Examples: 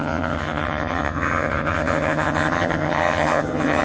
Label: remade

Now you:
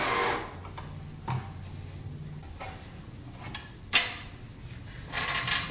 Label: recorded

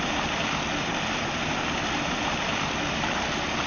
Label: recorded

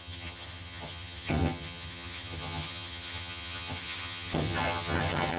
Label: remade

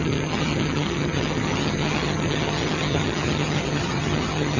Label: remade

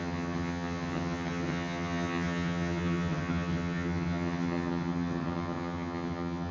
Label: remade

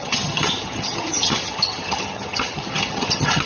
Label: remade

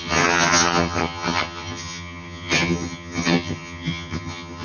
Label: remade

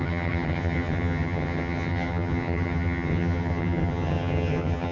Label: remade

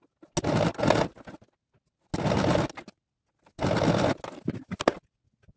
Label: recorded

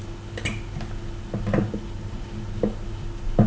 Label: recorded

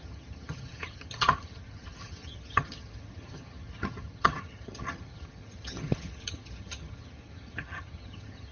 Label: remade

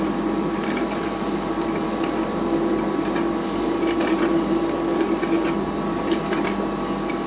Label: recorded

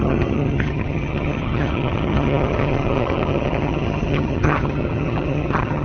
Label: remade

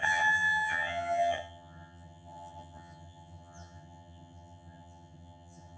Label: remade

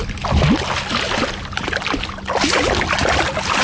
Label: recorded